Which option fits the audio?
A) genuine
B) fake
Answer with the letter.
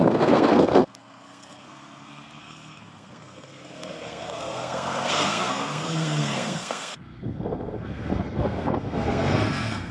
B